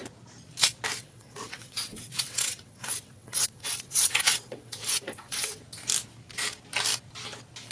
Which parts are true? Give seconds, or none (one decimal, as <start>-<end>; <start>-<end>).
0.0-1.0; 5.6-7.7